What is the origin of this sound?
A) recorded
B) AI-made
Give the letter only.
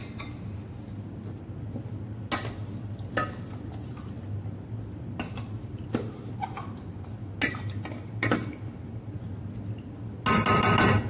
A